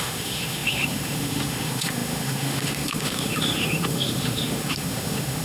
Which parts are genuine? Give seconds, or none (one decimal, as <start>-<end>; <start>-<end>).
none